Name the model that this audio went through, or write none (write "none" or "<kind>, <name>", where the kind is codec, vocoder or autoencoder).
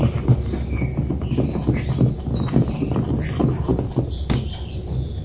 none